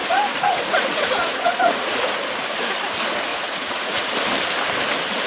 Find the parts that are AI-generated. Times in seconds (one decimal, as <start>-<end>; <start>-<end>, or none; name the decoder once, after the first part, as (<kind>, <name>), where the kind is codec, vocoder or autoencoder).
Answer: 0.0-2.1 (vocoder, Vocos); 3.3-4.1